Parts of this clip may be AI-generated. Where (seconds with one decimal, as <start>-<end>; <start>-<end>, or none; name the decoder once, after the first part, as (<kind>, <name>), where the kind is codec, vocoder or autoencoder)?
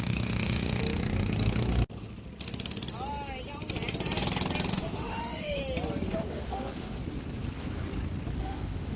0.0-0.8 (autoencoder, DAC-VAE); 4.7-5.6; 6.3-7.0; 8.4-9.0